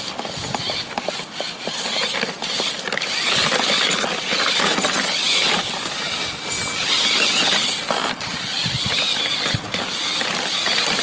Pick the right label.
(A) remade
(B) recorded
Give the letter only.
B